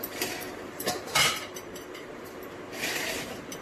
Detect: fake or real fake